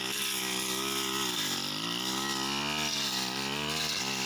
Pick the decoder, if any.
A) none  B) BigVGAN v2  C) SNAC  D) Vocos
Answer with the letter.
A